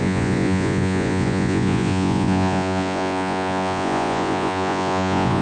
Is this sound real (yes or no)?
no